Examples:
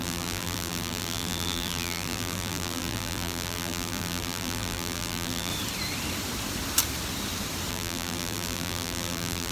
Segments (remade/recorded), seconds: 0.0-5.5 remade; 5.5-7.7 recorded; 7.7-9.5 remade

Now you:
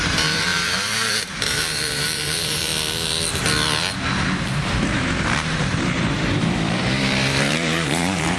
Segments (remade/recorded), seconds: 0.0-2.7 remade; 2.7-4.5 recorded; 4.5-8.4 remade

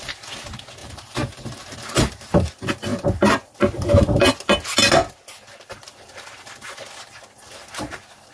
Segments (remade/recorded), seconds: 0.0-0.8 recorded; 0.8-2.5 remade; 2.5-8.3 recorded

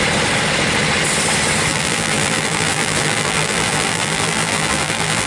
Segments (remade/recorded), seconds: 0.0-1.7 recorded; 1.7-5.3 remade